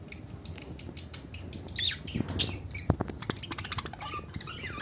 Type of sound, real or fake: real